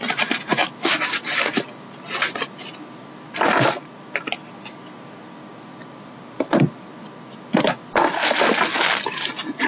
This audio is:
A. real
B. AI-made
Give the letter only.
A